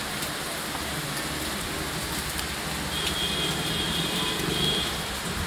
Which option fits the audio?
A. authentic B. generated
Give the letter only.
A